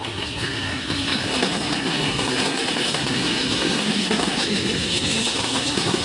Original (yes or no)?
no